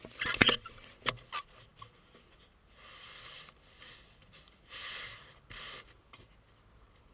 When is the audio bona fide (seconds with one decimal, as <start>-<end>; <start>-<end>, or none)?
0.0-0.4; 0.9-7.1